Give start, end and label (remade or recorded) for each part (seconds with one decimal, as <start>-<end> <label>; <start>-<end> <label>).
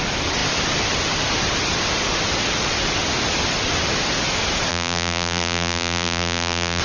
0.0-4.7 recorded; 4.7-6.8 remade